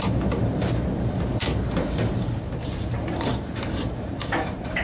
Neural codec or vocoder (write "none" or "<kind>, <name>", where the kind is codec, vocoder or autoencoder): vocoder, BigVGAN v2